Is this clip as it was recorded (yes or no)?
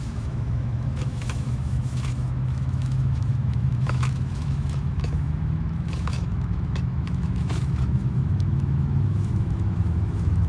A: no